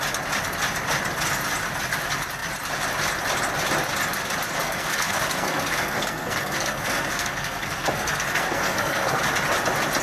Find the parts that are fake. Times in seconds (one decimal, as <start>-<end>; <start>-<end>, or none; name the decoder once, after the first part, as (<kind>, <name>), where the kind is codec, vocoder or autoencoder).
4.6-9.2 (codec, SNAC)